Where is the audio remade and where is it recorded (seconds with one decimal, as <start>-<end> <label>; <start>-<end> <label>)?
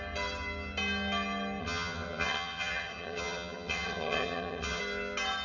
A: 0.0-1.6 recorded; 1.6-4.8 remade; 4.8-5.4 recorded